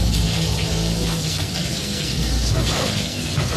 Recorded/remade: remade